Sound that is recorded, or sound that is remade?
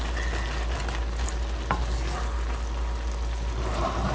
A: recorded